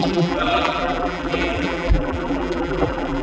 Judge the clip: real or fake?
fake